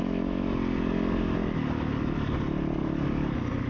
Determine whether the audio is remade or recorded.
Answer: recorded